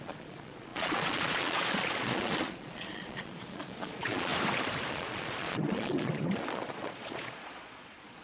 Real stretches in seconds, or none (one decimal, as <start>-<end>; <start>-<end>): 4.3-4.9